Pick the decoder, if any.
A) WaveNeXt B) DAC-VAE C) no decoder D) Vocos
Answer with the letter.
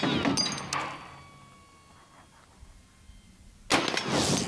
C